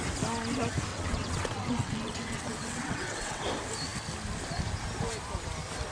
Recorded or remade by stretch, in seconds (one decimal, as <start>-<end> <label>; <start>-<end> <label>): 0.0-0.9 recorded; 0.9-3.4 remade; 3.4-5.9 recorded